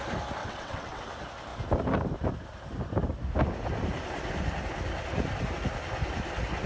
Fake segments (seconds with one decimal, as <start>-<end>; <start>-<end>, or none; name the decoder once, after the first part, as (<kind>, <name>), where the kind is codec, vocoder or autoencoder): 0.4-1.0 (vocoder, WaveNeXt)